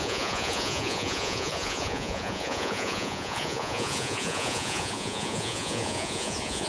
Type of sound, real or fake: fake